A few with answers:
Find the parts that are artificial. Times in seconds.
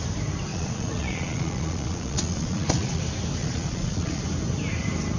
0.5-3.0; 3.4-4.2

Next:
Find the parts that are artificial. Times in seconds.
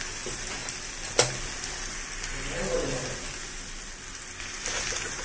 none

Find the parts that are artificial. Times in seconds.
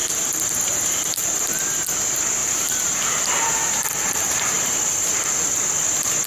0.0-1.5; 2.4-5.3